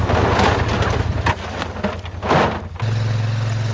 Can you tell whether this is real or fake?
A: real